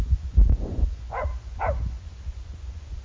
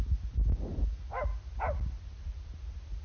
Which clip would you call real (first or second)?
second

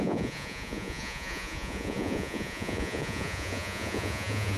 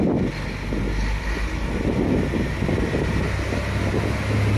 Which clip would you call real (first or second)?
second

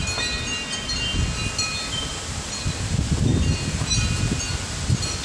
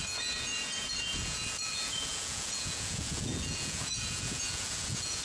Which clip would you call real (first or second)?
first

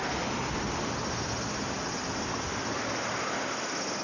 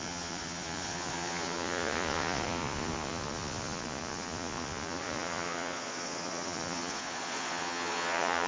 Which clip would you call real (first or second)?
first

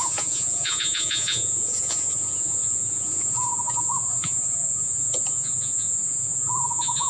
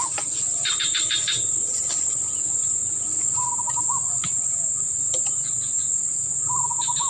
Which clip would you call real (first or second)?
second